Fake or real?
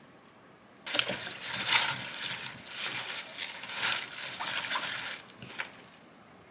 real